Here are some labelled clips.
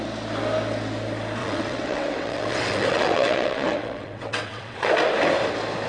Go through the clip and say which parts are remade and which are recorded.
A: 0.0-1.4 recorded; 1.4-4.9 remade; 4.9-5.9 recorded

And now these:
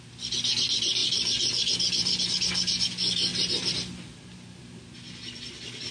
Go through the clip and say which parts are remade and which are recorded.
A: 0.0-5.9 recorded

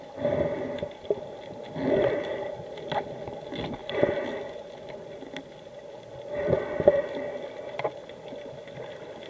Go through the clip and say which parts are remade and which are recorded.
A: 0.0-9.3 recorded